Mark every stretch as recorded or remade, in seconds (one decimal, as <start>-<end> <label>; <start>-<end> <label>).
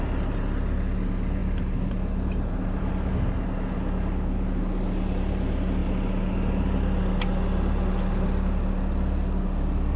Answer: 0.0-10.0 recorded